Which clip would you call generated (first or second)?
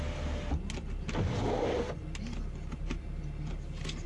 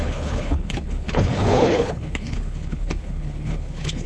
second